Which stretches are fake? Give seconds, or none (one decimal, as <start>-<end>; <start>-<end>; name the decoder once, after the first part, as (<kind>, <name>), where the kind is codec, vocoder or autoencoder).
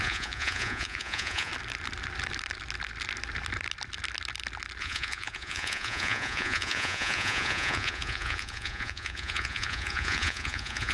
0.0-1.5 (vocoder, Vocos); 4.8-10.9